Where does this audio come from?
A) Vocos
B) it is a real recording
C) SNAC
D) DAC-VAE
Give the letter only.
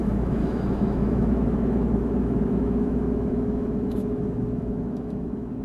D